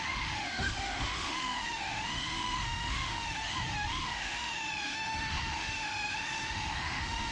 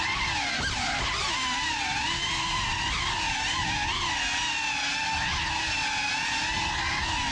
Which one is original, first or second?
second